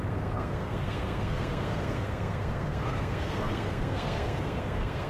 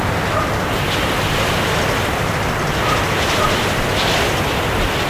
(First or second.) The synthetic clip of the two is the first